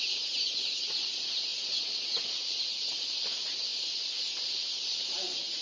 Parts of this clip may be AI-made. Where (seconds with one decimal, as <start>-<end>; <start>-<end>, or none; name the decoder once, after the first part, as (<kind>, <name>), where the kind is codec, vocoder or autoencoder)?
1.5-2.4 (vocoder, Vocos)